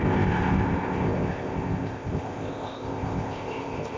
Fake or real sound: fake